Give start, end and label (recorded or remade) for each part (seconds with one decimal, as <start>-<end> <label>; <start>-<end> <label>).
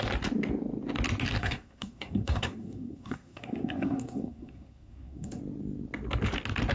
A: 0.0-1.4 recorded; 1.4-5.4 remade; 5.4-6.7 recorded